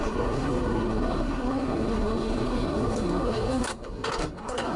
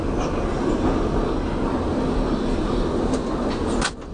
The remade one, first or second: first